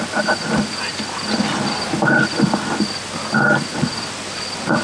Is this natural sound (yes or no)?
yes